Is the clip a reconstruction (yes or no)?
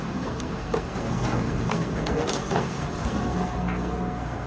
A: yes